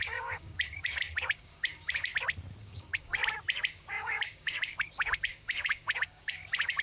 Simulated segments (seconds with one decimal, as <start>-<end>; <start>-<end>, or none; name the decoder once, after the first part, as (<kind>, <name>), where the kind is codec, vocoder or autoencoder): 0.0-2.1 (codec, DAC); 2.6-3.2; 3.7-6.8